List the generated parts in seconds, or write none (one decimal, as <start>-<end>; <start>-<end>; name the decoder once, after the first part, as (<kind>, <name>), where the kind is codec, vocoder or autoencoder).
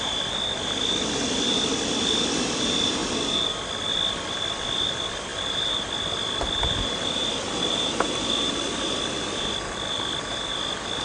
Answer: 0.0-3.0 (vocoder, BigVGAN v2); 3.8-11.0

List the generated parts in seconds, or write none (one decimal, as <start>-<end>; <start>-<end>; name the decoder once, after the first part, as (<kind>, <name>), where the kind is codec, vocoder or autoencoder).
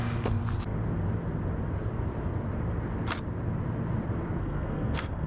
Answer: 4.4-5.3 (codec, SNAC)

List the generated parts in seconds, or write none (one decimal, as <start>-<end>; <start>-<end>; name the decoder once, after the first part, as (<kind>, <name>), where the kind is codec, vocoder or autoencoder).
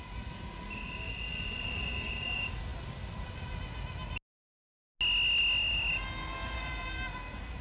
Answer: 1.3-2.1 (vocoder, Vocos)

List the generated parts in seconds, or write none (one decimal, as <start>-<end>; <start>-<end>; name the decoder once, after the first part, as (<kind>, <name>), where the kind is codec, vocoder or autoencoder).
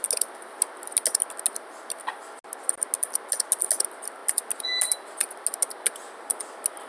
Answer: none